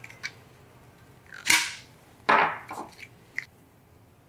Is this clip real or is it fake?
real